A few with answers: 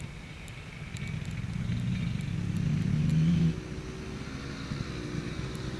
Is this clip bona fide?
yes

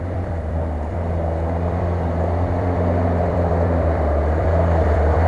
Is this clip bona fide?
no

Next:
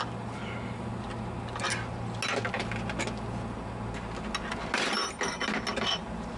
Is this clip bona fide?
yes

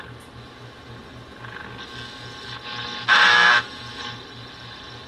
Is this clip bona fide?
yes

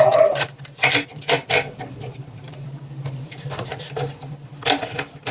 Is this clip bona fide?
no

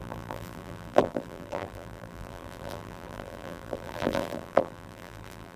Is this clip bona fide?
no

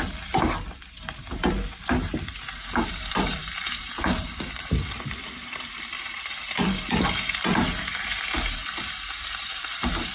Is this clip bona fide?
no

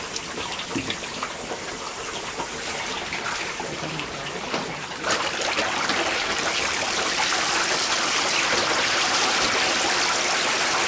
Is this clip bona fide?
no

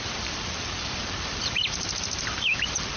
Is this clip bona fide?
no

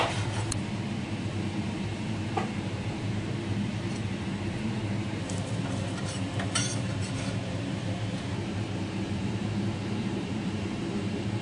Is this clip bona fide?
no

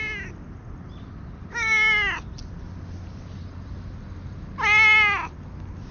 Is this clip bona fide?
yes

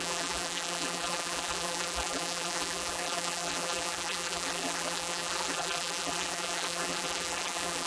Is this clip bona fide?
no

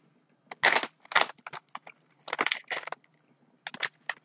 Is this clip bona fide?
yes